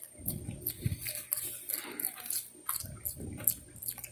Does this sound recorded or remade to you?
recorded